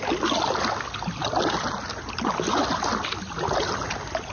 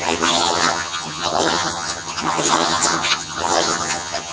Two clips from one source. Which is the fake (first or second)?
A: second